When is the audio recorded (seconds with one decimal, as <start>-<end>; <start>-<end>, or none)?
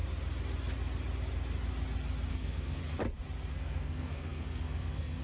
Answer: 0.0-2.3; 2.8-3.5